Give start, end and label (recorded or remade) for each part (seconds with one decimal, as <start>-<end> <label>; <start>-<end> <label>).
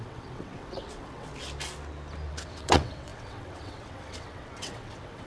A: 0.0-1.3 remade; 1.3-2.3 recorded; 2.3-5.3 remade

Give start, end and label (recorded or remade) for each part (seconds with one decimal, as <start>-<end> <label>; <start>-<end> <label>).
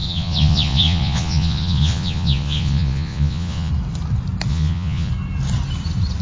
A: 0.0-3.7 remade; 3.7-4.5 recorded; 4.5-5.1 remade; 5.1-6.2 recorded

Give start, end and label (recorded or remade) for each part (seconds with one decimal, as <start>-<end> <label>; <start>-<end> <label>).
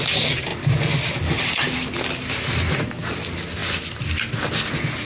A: 0.0-5.0 recorded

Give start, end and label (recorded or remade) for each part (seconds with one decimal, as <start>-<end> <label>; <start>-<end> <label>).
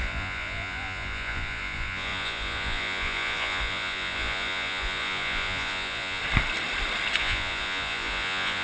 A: 0.0-6.2 remade; 6.2-7.2 recorded; 7.2-8.6 remade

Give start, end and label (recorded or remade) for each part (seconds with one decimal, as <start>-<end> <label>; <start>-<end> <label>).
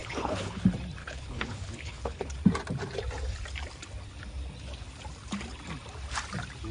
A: 0.0-0.6 remade; 0.6-1.0 recorded; 1.0-2.3 remade; 2.3-6.7 recorded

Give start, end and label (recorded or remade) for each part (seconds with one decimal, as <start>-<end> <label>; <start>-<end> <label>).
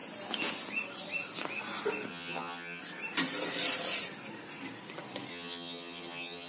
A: 0.0-2.1 recorded; 2.1-2.8 remade; 2.8-5.3 recorded; 5.3-6.5 remade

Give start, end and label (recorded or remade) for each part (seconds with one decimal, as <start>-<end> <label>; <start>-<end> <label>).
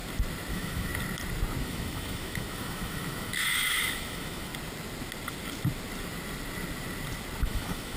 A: 0.0-0.5 recorded; 0.5-0.9 remade; 0.9-1.6 recorded; 1.6-4.5 remade; 4.5-7.4 recorded; 7.4-8.0 remade